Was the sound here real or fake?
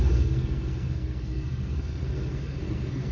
fake